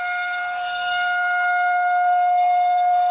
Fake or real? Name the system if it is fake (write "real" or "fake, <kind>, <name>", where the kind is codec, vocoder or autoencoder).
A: fake, codec, SNAC